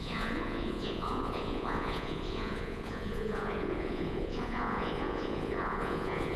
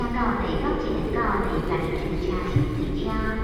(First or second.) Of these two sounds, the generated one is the first